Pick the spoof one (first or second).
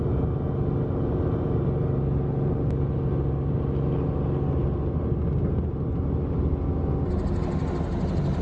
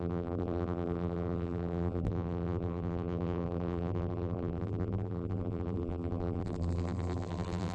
second